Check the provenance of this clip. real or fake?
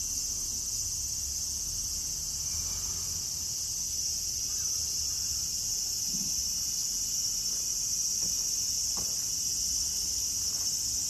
real